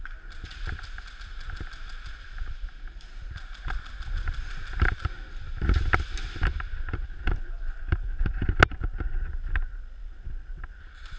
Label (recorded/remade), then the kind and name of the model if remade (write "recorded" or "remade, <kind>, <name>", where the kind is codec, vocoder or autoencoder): recorded